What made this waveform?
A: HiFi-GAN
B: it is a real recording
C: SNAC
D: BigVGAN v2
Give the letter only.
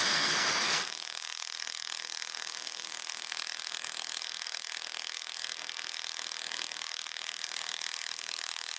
C